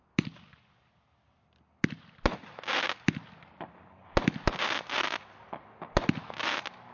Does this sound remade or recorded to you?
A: recorded